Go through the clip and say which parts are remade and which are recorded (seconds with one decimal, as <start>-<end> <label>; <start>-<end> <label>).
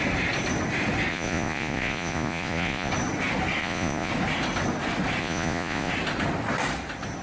0.0-1.1 recorded; 1.1-2.9 remade; 2.9-3.6 recorded; 3.6-4.1 remade; 4.1-5.2 recorded; 5.2-5.9 remade; 5.9-7.2 recorded